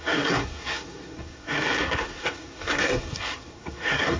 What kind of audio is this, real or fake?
fake